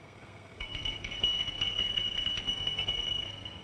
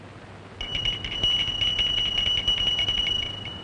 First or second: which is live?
second